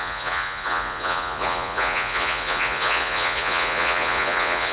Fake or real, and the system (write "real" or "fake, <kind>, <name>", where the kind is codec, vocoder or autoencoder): fake, vocoder, Vocos